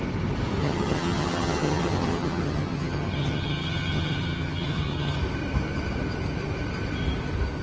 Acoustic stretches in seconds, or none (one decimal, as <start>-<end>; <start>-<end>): 0.0-0.6; 5.2-7.6